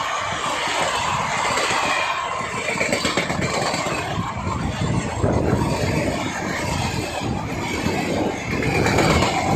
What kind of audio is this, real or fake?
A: real